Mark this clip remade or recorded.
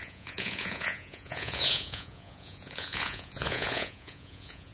remade